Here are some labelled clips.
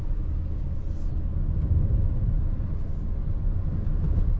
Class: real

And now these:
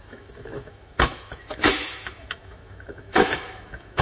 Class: fake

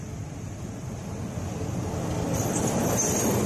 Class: real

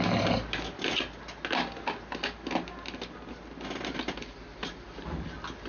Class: real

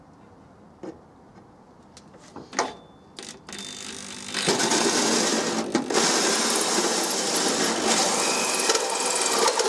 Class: real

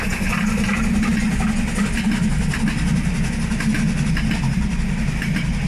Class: real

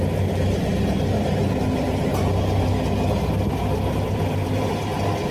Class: real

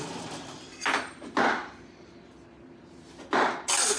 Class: real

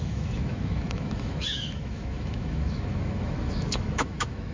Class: fake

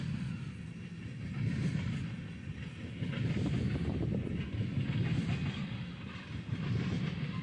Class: real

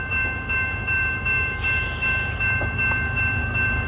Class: fake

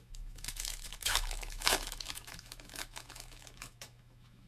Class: fake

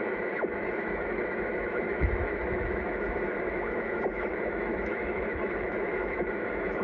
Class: fake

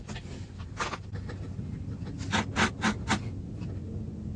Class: real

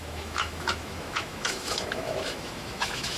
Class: fake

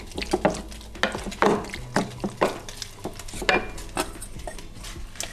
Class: real